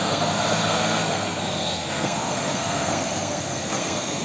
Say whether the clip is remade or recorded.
remade